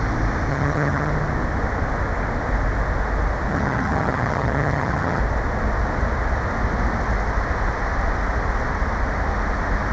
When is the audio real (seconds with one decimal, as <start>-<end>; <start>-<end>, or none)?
0.0-0.5; 1.1-3.5; 5.2-9.9